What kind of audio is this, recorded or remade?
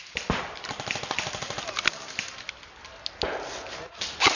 recorded